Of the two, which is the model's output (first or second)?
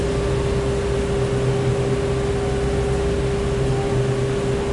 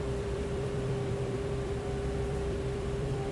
second